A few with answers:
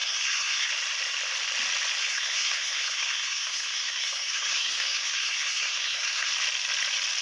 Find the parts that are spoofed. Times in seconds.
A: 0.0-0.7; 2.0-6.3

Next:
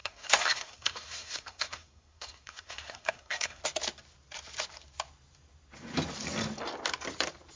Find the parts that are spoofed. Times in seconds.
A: 0.0-3.6

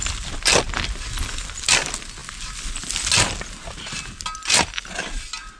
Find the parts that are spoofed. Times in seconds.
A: none

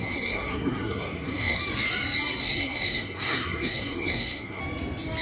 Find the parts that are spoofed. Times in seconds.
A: 0.0-1.6; 2.4-4.6